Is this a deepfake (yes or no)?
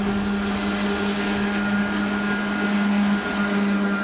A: no